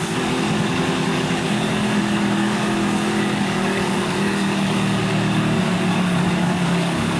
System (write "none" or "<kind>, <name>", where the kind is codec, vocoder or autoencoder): codec, DAC